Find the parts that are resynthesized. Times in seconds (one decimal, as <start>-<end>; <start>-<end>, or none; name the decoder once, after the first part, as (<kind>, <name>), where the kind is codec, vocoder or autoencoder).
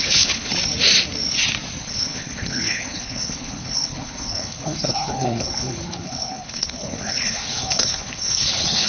0.0-0.5 (codec, HILCodec); 1.8-8.9